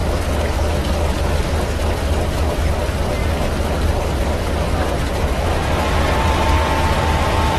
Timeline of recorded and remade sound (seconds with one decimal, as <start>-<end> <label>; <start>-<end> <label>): 0.0-3.2 recorded; 3.2-7.6 remade